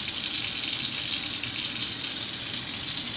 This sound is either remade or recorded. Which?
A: recorded